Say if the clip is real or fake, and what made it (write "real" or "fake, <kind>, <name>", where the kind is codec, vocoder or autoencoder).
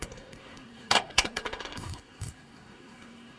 fake, codec, SNAC